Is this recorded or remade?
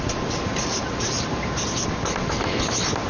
recorded